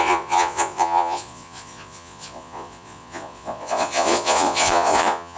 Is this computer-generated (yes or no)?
yes